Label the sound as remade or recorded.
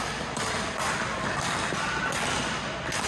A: recorded